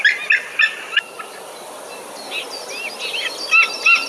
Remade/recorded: recorded